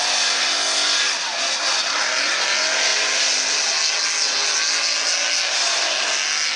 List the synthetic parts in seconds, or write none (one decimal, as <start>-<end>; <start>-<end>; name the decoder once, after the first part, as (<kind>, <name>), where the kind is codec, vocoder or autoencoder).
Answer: none